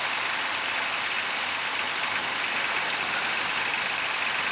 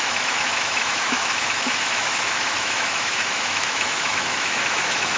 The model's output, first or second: second